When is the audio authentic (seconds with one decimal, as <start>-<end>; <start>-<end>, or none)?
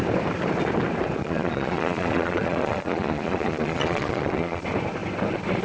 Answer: 0.0-1.2; 4.6-5.6